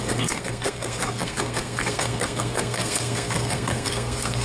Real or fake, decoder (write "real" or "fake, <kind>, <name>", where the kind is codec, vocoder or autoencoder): fake, codec, SNAC